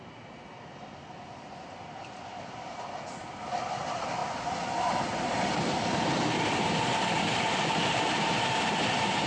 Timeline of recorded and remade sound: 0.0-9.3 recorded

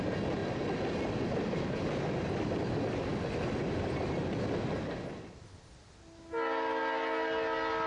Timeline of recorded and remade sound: 0.0-7.9 recorded

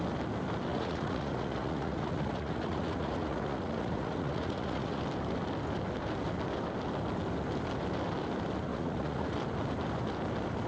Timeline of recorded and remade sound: 0.0-0.7 recorded; 0.7-5.0 remade; 5.0-8.7 recorded; 8.7-9.3 remade; 9.3-10.7 recorded

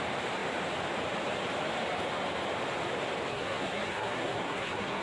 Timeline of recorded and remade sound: 0.0-3.3 recorded; 3.3-5.0 remade

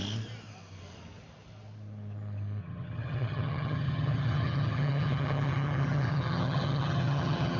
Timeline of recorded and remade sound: 0.0-2.6 recorded; 2.6-7.6 remade

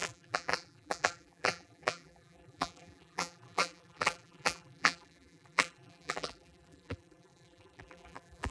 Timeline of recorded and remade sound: 0.0-8.5 remade